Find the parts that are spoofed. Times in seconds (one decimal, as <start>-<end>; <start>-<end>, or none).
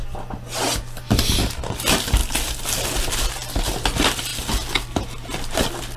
none